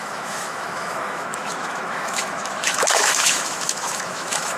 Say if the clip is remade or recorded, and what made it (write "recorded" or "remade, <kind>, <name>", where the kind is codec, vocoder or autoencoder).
remade, autoencoder, DAC-VAE